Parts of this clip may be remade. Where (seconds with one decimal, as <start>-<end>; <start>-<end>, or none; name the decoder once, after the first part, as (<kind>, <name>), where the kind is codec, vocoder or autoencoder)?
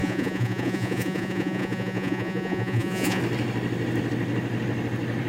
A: 0.0-3.2 (vocoder, Vocos)